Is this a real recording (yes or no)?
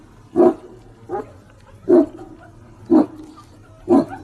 yes